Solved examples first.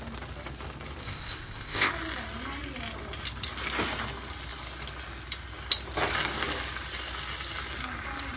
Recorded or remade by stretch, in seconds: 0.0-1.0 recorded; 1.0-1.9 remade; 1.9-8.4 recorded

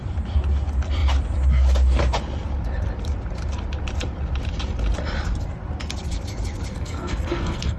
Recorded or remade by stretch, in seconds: 0.0-6.7 recorded; 6.7-7.8 remade